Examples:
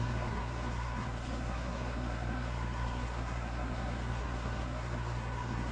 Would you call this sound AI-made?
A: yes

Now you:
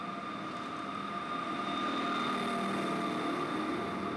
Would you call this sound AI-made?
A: no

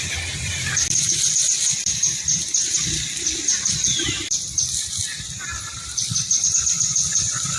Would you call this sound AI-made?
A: yes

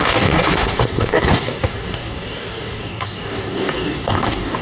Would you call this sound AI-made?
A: yes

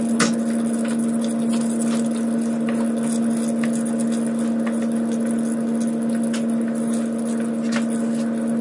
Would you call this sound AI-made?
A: no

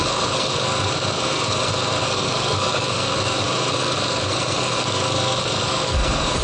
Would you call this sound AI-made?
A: yes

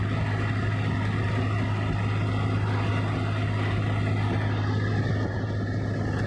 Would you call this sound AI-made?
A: no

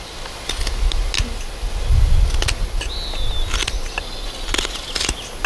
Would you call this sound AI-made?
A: no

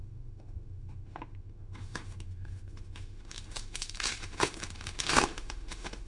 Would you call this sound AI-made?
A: yes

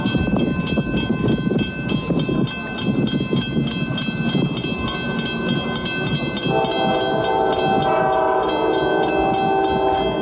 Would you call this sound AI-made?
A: no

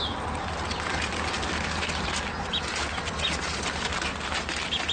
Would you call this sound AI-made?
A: no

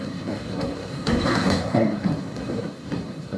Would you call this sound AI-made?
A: yes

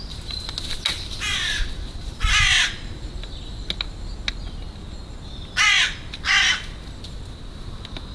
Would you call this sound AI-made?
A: no